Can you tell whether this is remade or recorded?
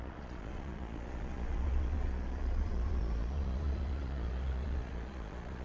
remade